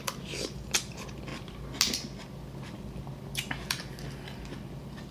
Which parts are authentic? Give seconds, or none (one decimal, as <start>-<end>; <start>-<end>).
0.0-5.1